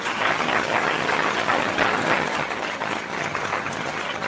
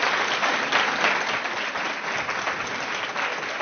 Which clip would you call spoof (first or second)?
first